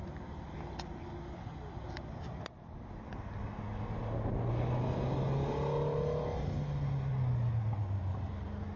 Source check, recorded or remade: recorded